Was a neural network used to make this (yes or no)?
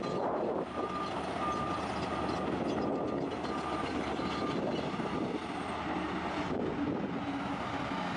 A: no